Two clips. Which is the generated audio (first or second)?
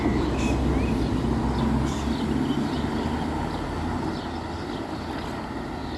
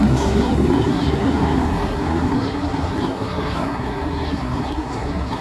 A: second